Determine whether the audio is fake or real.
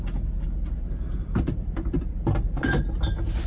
real